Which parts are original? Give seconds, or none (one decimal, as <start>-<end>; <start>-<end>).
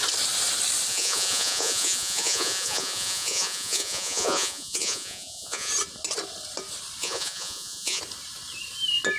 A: 0.0-0.9; 5.7-7.0; 8.0-9.2